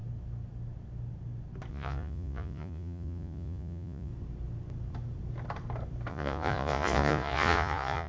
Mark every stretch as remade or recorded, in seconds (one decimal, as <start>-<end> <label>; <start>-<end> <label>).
0.0-1.7 recorded; 1.7-4.1 remade; 4.1-6.1 recorded; 6.1-8.1 remade